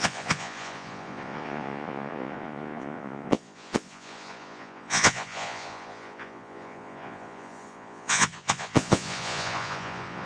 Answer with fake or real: fake